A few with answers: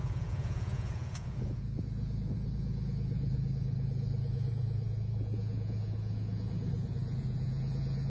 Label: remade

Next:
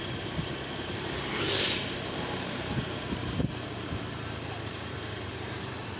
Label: remade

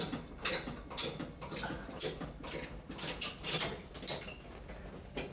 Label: recorded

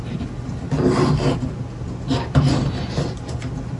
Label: recorded